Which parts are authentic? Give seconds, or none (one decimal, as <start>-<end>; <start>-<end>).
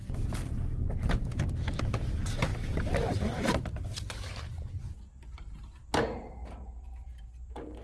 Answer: none